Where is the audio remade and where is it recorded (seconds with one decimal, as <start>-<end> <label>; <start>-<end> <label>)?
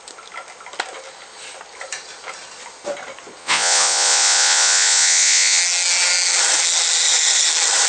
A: 0.0-3.4 recorded; 3.4-5.6 remade; 5.6-7.9 recorded